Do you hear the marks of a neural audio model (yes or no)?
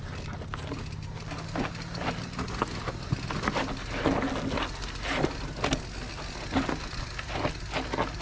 no